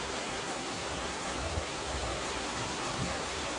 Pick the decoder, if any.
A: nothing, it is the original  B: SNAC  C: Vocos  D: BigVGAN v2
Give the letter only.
B